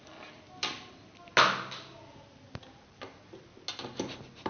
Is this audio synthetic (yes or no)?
no